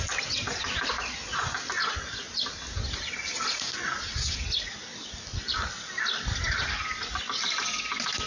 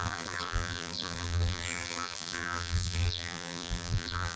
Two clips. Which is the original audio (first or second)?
first